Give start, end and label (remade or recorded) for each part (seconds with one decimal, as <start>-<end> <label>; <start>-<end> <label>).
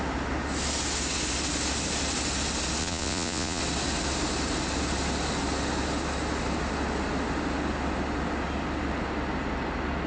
0.0-2.8 recorded; 2.8-3.6 remade; 3.6-10.1 recorded